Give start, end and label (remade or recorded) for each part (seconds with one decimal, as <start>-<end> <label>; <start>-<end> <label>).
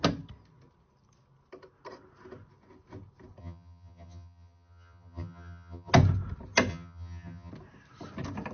0.0-3.4 recorded; 3.4-5.9 remade; 5.9-6.7 recorded; 6.7-7.5 remade; 7.5-8.5 recorded